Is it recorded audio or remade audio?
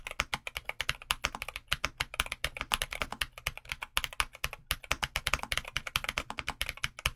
recorded